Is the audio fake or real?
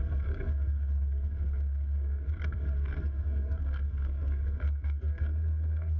fake